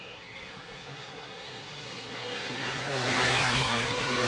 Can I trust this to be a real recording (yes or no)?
no